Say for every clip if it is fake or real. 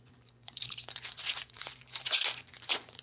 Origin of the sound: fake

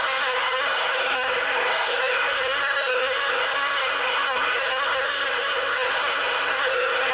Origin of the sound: fake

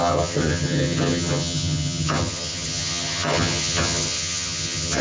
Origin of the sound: fake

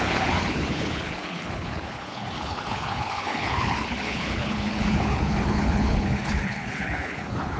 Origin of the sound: fake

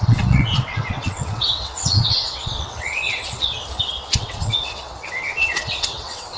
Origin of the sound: fake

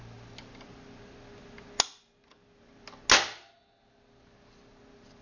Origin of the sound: real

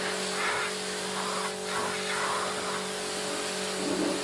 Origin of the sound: real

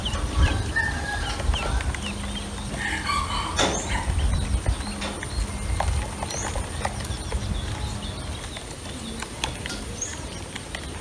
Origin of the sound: real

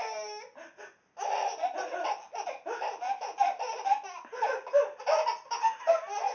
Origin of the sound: real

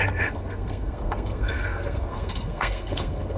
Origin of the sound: fake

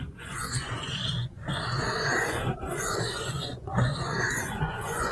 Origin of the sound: fake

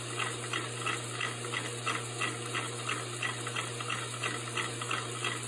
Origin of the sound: real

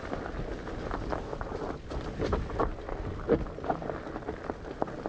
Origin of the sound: real